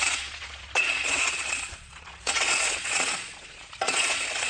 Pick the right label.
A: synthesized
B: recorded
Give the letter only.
A